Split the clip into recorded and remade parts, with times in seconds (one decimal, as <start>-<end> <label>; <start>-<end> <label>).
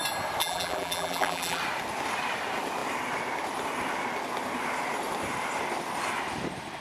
0.0-0.4 recorded; 0.4-1.6 remade; 1.6-6.8 recorded